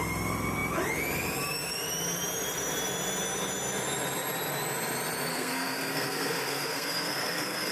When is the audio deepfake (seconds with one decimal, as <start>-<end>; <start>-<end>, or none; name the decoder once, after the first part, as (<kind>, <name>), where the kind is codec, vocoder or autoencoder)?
5.3-7.7 (codec, SNAC)